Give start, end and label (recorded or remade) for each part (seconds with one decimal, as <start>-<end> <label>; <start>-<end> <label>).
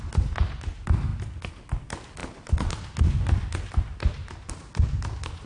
0.0-5.5 recorded